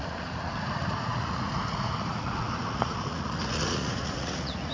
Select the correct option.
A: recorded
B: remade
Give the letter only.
B